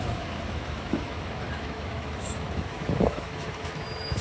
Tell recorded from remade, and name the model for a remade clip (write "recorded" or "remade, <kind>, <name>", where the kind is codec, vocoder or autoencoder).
remade, autoencoder, DAC-VAE